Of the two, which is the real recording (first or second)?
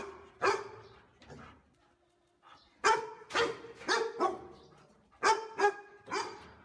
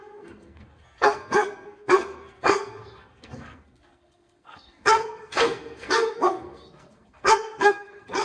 first